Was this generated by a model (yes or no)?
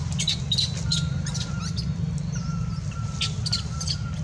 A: no